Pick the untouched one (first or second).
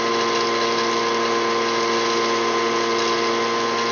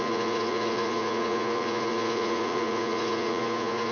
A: first